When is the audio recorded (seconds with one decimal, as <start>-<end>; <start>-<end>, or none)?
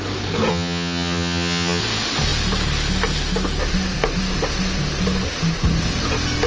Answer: 0.0-0.5; 1.8-6.5